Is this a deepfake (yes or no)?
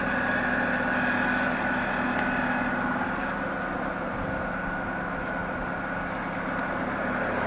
no